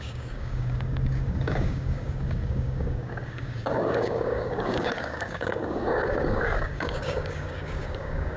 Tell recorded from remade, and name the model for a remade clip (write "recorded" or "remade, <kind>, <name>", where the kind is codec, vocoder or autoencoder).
remade, codec, DAC